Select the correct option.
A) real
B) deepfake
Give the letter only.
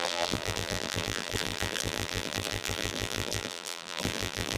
B